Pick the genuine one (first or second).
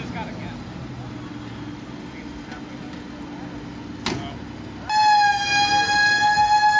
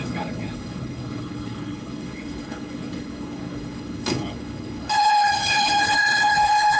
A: first